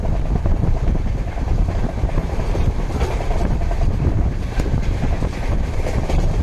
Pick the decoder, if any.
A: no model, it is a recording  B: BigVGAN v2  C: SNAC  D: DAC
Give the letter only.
B